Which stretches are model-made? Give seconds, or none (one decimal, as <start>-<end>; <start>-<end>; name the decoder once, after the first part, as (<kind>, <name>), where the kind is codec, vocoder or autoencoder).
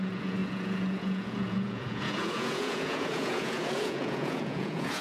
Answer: 0.0-5.0 (vocoder, Vocos)